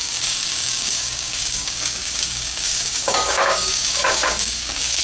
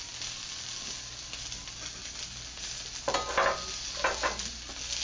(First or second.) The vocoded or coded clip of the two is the first